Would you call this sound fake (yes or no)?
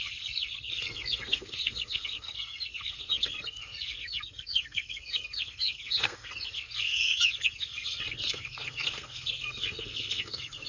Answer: yes